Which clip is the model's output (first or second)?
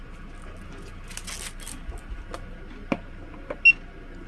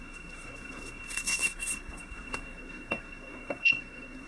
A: second